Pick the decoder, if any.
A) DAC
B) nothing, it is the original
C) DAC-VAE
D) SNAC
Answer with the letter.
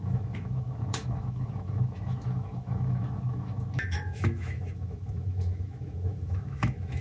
C